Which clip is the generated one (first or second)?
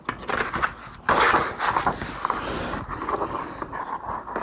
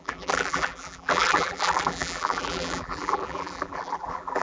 second